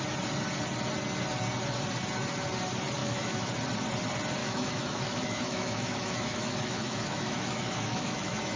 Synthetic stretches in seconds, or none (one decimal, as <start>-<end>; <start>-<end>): 3.0-3.5; 4.4-8.6